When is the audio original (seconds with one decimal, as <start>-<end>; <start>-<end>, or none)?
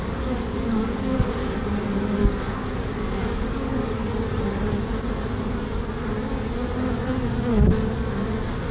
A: 1.4-2.2; 4.0-7.5